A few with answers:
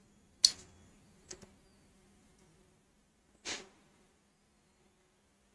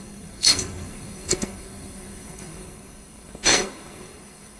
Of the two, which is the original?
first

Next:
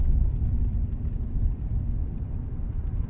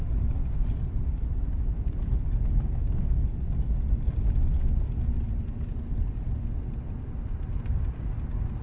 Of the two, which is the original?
second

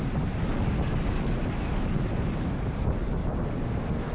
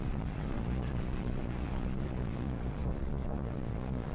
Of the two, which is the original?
first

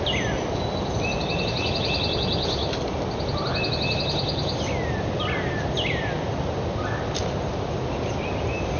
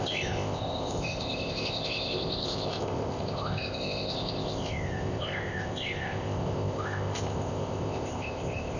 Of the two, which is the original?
first